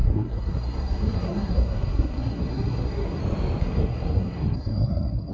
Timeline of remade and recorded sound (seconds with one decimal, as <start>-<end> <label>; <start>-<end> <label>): 0.0-3.2 remade; 3.2-3.6 recorded; 3.6-5.3 remade